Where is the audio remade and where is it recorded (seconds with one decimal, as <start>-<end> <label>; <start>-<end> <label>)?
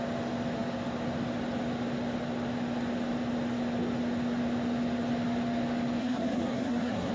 0.0-6.0 recorded; 6.0-7.1 remade